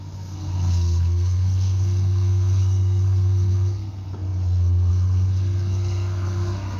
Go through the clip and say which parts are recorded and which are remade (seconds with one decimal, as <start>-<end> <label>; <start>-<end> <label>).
0.0-6.8 remade